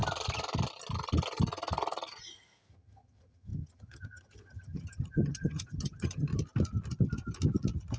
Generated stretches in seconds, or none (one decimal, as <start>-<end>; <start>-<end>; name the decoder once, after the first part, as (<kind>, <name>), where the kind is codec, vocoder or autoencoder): 2.7-6.3 (vocoder, HiFi-GAN)